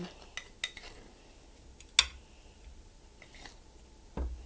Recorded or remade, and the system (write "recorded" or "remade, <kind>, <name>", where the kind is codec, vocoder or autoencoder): recorded